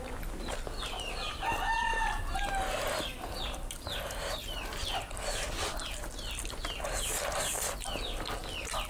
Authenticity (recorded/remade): recorded